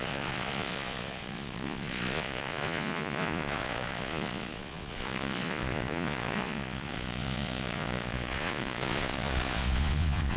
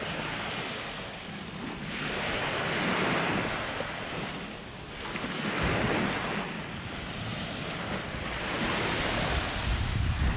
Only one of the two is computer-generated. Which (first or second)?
first